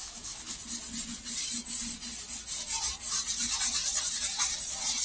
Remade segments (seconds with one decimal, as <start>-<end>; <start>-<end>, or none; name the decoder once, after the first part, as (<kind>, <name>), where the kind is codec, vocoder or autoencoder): 0.0-0.6 (autoencoder, DAC-VAE)